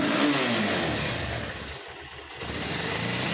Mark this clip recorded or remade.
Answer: recorded